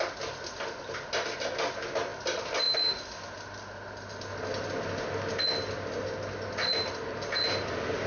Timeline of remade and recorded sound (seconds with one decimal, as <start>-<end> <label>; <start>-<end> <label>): 0.0-8.1 recorded